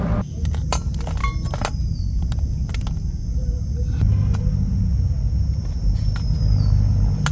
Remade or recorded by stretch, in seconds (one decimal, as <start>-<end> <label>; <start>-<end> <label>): 0.0-7.3 recorded